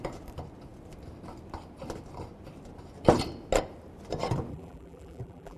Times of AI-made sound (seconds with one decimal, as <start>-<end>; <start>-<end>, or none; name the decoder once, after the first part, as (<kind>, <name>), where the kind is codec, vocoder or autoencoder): 4.5-5.6 (vocoder, BigVGAN v2)